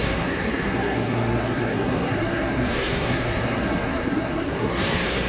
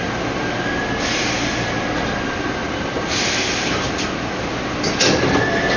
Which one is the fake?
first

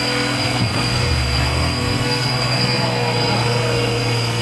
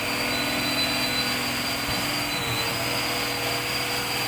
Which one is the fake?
first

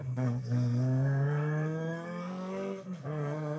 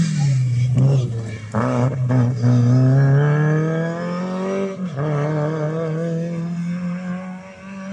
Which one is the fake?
first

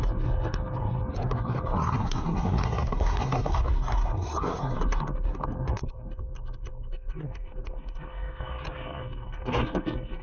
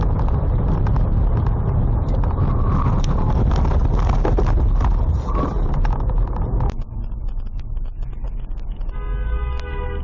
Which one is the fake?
first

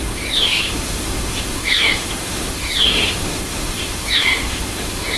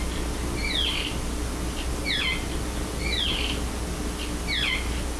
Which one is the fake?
first